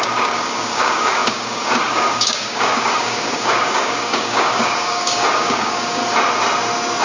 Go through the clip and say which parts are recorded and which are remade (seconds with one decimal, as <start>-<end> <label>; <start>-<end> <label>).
0.0-6.0 remade; 6.0-7.0 recorded